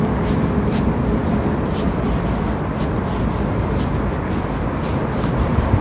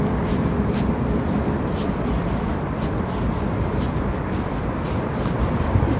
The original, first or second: first